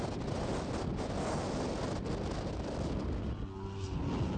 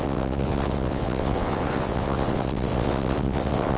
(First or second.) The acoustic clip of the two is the first